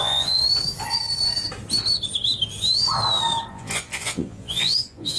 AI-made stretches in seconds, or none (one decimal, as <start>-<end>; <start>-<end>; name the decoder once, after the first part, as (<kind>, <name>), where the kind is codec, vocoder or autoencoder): 0.0-0.4 (vocoder, Vocos); 3.5-5.2